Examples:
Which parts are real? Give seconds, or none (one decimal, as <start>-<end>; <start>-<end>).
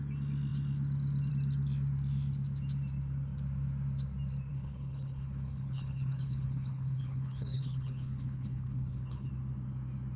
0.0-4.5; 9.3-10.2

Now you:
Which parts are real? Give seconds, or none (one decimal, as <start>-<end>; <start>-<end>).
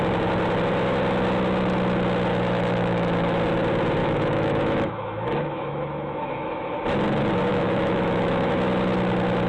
0.0-2.3; 3.4-4.0; 6.7-7.5; 8.5-9.5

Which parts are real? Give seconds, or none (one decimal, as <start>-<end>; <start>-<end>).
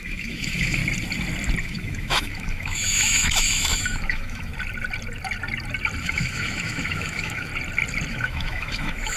0.8-1.6; 4.5-6.0; 7.5-8.1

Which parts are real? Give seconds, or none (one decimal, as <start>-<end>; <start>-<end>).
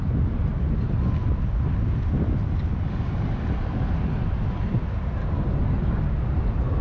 0.0-6.8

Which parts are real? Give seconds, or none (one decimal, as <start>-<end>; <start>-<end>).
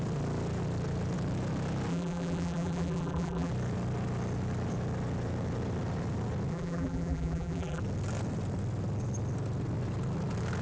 0.0-1.9; 3.5-6.5; 7.8-10.6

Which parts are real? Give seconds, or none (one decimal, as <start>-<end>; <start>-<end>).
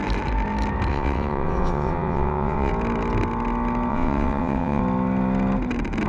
0.0-0.9; 2.7-3.9; 4.8-6.1